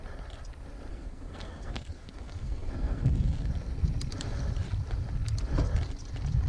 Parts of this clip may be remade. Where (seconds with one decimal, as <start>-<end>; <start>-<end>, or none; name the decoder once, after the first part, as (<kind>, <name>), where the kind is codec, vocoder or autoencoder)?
0.9-3.5 (codec, SNAC)